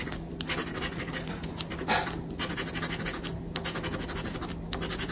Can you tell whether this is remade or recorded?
recorded